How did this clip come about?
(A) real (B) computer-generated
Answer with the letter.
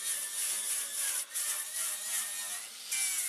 A